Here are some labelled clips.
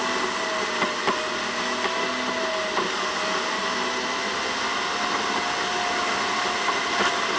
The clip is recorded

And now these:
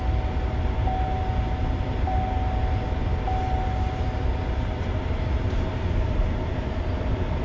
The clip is recorded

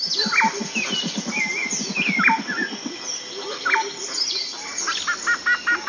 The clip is recorded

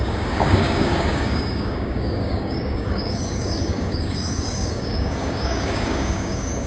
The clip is remade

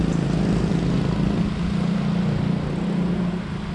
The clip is recorded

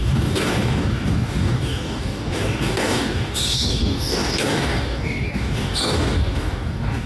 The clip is remade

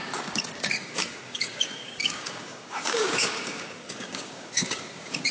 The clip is remade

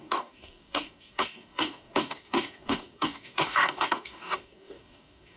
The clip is remade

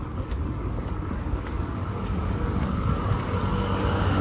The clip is remade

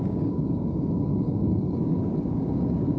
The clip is remade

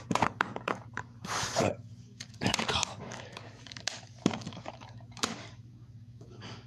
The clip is remade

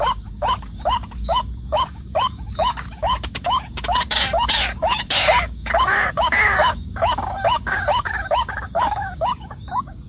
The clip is remade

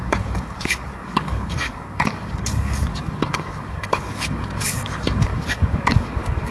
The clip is remade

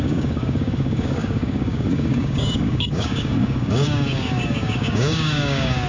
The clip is remade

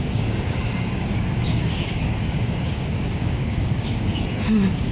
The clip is remade